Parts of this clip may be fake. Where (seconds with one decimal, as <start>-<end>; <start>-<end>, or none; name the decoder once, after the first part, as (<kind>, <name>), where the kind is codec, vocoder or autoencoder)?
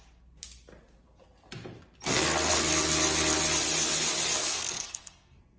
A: 4.4-5.6 (codec, SNAC)